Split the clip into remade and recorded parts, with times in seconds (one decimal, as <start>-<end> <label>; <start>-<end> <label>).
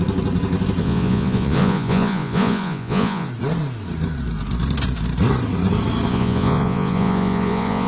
0.0-0.8 recorded; 0.8-3.3 remade; 3.3-6.1 recorded; 6.1-7.9 remade